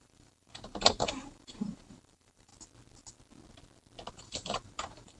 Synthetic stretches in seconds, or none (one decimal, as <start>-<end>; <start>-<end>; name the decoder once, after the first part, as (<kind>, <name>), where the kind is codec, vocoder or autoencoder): 0.0-2.5 (vocoder, BigVGAN v2); 4.1-5.2